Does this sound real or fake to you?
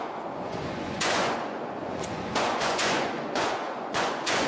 fake